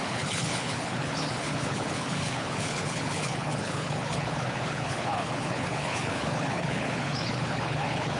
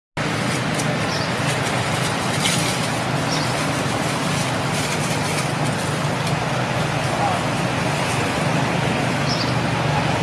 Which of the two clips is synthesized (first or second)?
first